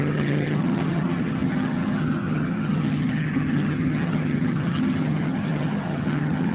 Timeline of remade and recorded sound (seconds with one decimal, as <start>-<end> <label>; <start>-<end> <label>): 0.0-6.5 remade